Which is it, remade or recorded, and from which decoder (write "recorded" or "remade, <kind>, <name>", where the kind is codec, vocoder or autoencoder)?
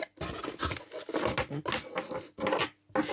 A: recorded